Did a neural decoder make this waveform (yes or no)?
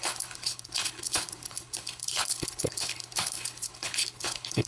yes